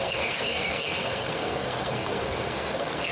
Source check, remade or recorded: remade